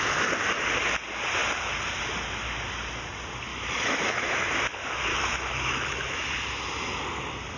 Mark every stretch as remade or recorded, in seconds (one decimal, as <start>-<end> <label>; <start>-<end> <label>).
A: 0.0-3.5 recorded; 3.5-4.5 remade; 4.5-5.1 recorded; 5.1-6.3 remade; 6.3-7.6 recorded